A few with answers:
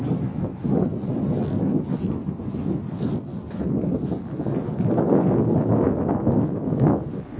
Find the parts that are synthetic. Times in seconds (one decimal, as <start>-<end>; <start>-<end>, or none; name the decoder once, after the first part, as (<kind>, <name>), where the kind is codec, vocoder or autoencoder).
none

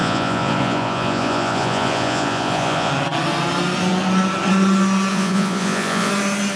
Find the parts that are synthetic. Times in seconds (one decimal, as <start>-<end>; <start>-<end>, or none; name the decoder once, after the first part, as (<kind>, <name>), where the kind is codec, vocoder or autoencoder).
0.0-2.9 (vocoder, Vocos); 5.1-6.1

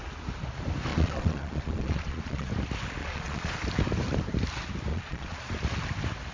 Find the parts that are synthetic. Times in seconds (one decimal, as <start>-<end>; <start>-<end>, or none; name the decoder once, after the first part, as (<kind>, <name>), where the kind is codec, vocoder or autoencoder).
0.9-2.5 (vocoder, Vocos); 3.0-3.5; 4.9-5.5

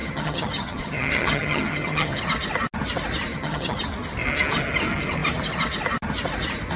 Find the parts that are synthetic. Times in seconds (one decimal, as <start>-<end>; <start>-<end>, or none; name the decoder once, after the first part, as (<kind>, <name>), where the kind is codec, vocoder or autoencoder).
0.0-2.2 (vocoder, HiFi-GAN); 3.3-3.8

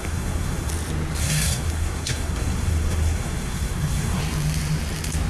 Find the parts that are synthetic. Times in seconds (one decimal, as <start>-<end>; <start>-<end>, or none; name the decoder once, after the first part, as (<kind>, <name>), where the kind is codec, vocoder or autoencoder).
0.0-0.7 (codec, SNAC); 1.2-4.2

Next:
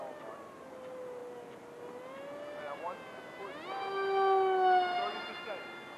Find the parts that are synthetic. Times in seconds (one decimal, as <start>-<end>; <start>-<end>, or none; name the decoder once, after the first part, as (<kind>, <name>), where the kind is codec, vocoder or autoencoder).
none

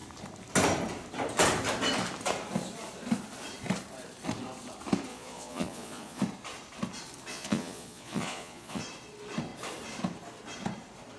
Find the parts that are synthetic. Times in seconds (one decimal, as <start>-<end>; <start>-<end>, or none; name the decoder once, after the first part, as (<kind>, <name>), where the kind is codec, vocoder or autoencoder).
5.1-6.2 (vocoder, Vocos); 7.3-8.8